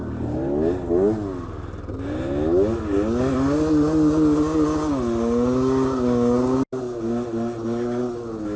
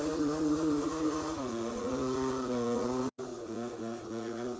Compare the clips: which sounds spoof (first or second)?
second